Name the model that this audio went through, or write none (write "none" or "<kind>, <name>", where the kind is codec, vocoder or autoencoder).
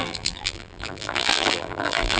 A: vocoder, BigVGAN v2